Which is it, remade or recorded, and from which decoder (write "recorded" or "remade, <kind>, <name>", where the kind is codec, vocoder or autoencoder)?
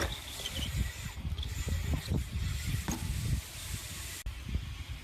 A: recorded